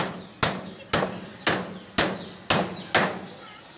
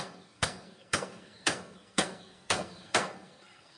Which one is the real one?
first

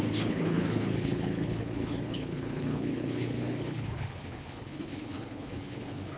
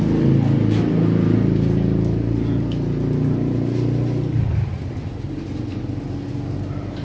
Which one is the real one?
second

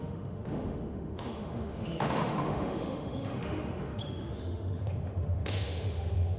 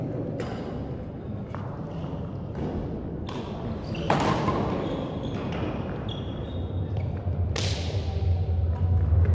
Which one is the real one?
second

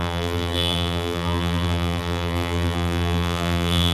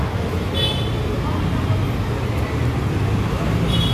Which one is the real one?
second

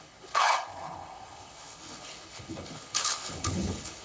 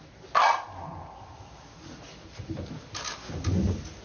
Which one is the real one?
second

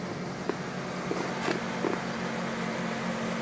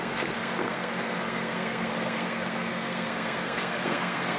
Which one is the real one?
first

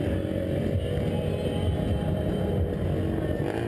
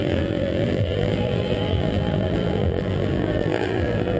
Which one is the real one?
first